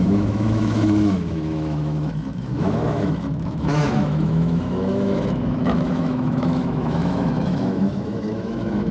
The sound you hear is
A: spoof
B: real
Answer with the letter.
A